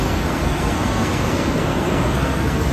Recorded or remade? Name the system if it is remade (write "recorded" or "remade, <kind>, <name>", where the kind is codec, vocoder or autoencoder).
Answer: remade, codec, SNAC